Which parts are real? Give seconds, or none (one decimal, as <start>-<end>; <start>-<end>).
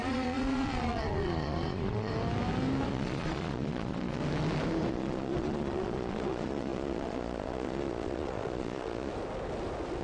2.1-2.9; 4.2-4.9; 9.1-10.0